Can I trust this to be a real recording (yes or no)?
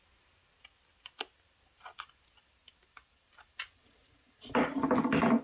yes